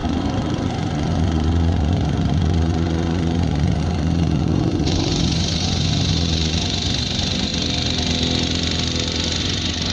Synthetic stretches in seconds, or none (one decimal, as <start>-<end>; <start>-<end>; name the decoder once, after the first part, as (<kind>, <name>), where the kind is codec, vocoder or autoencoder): 0.0-7.5 (vocoder, Vocos); 9.4-9.9